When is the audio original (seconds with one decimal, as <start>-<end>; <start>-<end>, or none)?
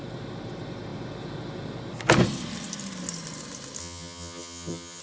0.0-3.8